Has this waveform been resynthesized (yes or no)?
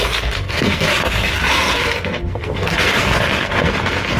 yes